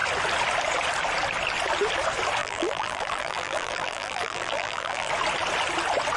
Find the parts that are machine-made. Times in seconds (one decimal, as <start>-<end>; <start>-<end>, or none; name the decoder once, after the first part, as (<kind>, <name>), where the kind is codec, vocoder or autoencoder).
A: 2.4-5.1 (vocoder, BigVGAN v2)